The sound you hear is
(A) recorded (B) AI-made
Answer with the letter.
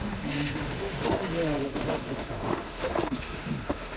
B